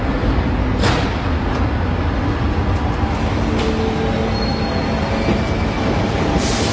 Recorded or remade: recorded